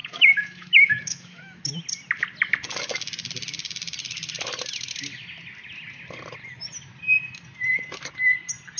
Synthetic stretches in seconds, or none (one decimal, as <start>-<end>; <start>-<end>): 0.0-1.7